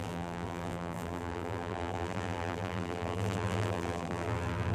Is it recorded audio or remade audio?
remade